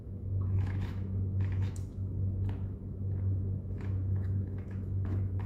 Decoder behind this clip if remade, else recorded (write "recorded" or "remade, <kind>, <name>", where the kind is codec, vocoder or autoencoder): remade, autoencoder, DAC-VAE